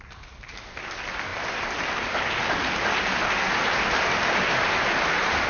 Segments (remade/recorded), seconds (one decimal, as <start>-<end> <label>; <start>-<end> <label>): 0.0-5.5 recorded